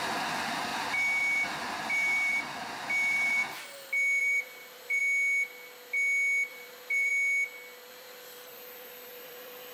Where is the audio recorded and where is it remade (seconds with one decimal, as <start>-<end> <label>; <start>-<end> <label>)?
0.0-3.4 remade; 3.4-4.2 recorded; 4.2-5.0 remade; 5.0-6.5 recorded; 6.5-7.1 remade; 7.1-7.9 recorded; 7.9-9.7 remade